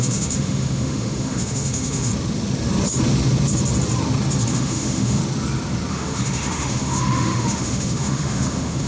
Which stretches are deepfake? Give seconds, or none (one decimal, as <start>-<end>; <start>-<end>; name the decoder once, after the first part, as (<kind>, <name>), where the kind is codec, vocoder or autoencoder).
0.0-2.1 (autoencoder, DAC-VAE); 4.5-5.2; 5.9-8.9